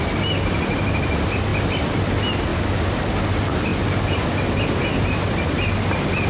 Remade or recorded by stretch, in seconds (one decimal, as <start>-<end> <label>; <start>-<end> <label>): 0.0-6.3 recorded